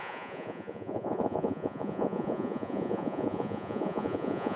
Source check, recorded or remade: remade